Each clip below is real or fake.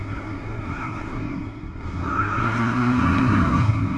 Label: fake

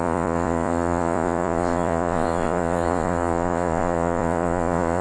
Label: fake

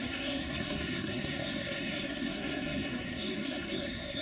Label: fake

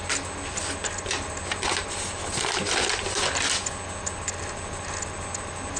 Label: real